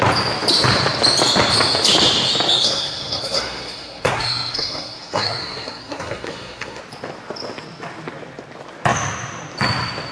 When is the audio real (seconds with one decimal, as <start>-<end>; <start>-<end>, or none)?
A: 0.0-2.5; 6.8-10.1